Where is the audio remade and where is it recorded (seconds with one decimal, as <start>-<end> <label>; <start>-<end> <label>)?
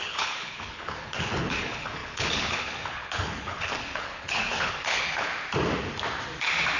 0.0-5.3 remade; 5.3-6.8 recorded